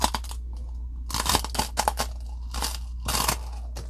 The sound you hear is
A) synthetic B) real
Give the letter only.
B